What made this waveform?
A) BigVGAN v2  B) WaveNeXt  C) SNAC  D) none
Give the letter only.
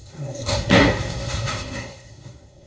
C